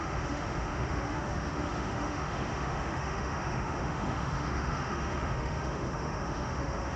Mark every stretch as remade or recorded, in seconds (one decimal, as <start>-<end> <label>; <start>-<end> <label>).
0.0-7.0 remade